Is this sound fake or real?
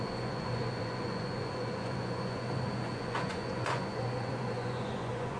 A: fake